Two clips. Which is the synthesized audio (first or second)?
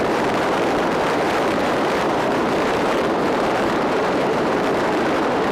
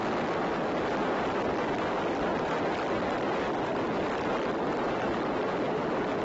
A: first